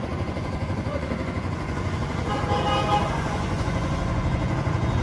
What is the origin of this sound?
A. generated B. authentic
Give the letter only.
A